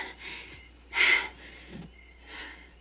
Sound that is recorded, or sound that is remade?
recorded